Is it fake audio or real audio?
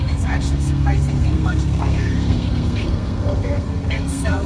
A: fake